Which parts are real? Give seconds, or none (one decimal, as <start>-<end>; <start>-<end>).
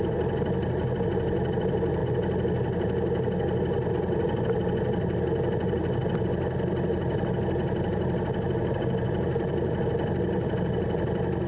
0.0-11.5